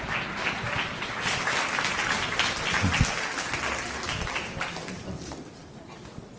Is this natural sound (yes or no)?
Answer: yes